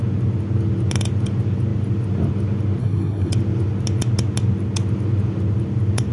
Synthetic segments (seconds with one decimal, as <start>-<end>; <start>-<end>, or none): 2.8-3.3

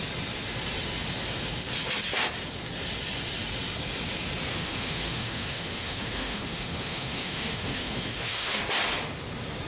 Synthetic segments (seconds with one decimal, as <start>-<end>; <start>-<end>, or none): 4.5-8.6

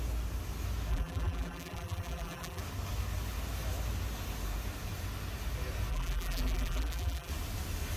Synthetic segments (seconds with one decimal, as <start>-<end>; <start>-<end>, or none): 0.9-2.6; 5.9-7.3

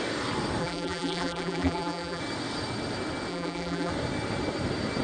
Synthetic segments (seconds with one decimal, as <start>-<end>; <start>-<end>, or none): 0.6-2.2; 3.3-3.9

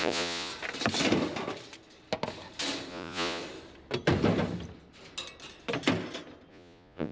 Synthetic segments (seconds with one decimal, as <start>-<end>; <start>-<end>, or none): 0.0-0.5; 2.9-3.4; 6.5-7.1